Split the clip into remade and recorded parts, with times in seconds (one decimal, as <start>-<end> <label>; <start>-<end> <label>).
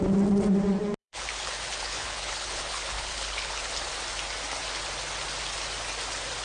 0.0-1.0 recorded; 1.0-3.6 remade; 3.6-6.4 recorded